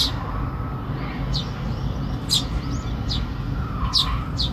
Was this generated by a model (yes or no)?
no